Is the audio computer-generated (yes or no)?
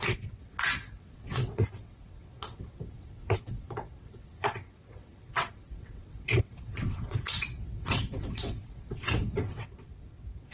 yes